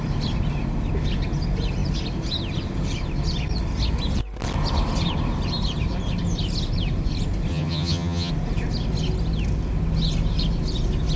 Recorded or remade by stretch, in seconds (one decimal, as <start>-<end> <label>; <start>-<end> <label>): 0.0-7.5 recorded; 7.5-8.3 remade; 8.3-11.2 recorded